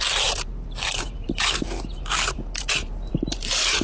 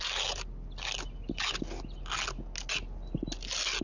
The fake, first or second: first